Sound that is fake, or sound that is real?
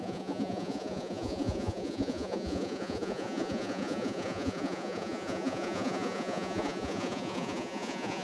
fake